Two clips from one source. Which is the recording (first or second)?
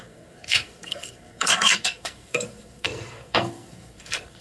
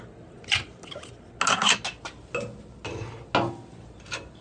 second